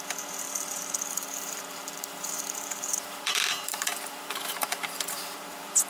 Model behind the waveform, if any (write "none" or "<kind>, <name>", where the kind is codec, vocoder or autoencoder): vocoder, BigVGAN v2